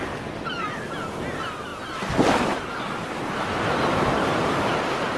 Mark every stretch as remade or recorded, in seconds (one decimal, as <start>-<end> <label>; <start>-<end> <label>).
0.0-5.2 recorded